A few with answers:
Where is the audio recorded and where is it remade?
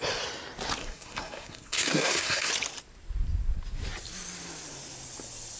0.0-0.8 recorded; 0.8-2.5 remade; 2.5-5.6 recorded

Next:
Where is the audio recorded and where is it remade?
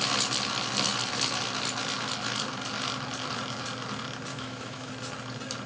0.0-4.3 recorded; 4.3-4.9 remade; 4.9-5.7 recorded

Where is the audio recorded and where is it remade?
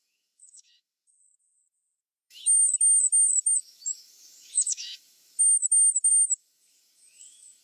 0.0-7.6 remade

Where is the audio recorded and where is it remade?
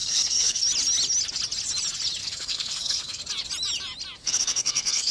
0.0-0.6 remade; 0.6-2.2 recorded; 2.2-3.2 remade; 3.2-4.2 recorded; 4.2-5.1 remade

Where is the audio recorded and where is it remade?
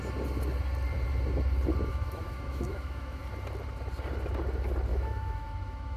0.0-1.9 recorded; 1.9-3.2 remade; 3.2-4.9 recorded; 4.9-6.0 remade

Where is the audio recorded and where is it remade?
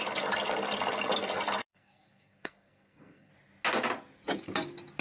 0.0-1.7 recorded; 1.7-3.3 remade; 3.3-5.0 recorded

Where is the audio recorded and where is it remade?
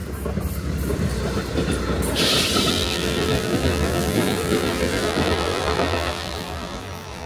0.0-2.7 recorded; 2.7-7.3 remade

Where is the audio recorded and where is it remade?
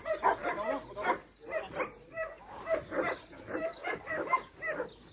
0.0-2.1 recorded; 2.1-2.8 remade; 2.8-3.7 recorded; 3.7-4.6 remade; 4.6-5.1 recorded